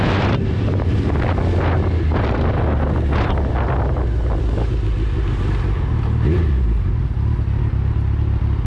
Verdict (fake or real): real